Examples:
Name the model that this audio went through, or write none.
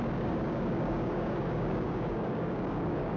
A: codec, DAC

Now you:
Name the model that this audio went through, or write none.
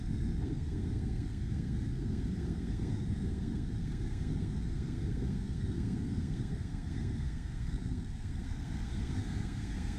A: codec, SNAC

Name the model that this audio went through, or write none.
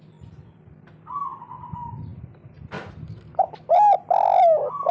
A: none